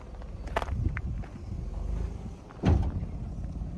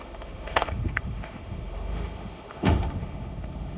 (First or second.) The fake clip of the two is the second